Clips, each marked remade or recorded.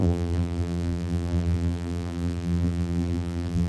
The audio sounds remade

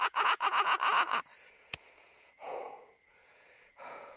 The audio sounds remade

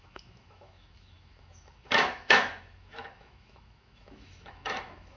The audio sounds remade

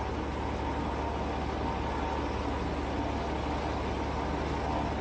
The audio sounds recorded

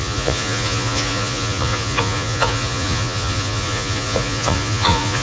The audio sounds remade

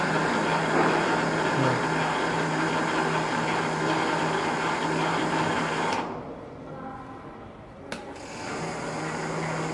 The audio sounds recorded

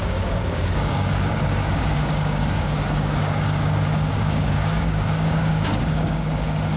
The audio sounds remade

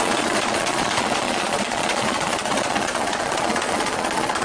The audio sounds remade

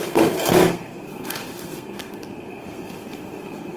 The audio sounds remade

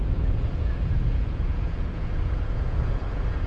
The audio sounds remade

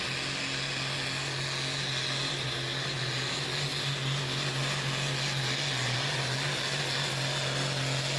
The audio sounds recorded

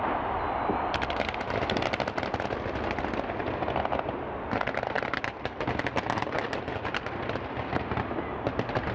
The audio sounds recorded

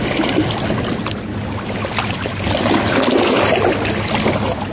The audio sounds recorded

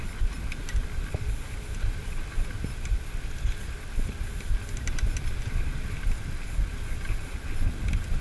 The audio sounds recorded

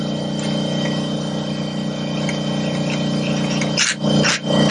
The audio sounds recorded